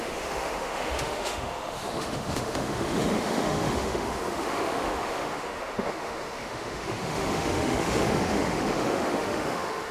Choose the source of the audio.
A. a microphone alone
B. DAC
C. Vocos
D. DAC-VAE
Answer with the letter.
D